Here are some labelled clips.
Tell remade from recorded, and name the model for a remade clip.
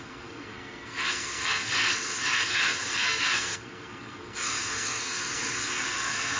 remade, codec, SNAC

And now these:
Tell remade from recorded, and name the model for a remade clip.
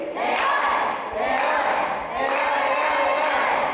recorded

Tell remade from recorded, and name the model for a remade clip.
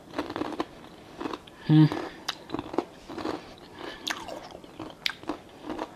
recorded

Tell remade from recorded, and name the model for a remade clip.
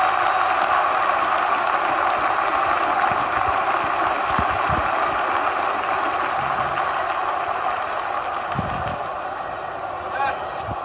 recorded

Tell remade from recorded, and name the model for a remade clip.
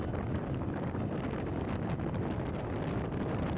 recorded